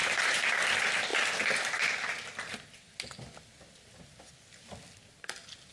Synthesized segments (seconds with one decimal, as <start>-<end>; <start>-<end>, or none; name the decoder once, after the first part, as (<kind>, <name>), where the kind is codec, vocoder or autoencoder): none